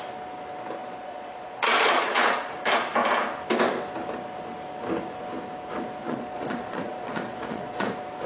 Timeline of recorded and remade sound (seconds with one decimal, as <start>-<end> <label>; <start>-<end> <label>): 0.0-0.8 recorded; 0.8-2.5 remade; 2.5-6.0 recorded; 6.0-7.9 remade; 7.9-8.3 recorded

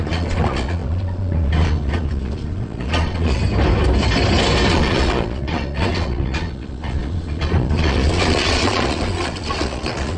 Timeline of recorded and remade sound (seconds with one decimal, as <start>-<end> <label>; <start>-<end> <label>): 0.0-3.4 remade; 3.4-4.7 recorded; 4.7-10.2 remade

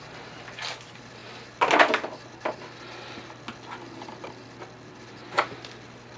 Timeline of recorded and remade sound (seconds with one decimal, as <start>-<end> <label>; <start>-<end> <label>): 0.0-6.2 recorded

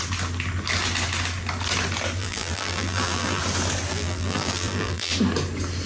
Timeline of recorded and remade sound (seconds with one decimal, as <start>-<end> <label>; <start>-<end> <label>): 0.0-2.2 recorded; 2.2-3.4 remade; 3.4-3.9 recorded; 3.9-5.1 remade; 5.1-5.9 recorded